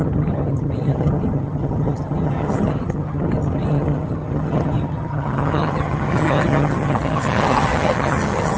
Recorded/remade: remade